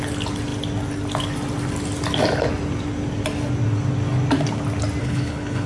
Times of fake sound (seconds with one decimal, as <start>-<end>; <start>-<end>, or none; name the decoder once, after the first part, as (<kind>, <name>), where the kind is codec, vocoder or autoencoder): 5.0-5.7 (codec, HILCodec)